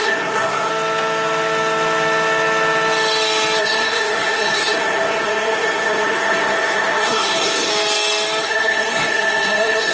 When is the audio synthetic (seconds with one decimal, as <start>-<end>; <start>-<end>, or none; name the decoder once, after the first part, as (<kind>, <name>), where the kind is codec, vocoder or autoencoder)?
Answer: 0.0-0.7 (codec, SNAC); 3.6-7.7; 8.4-9.9